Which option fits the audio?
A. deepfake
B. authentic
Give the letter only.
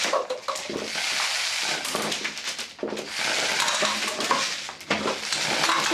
B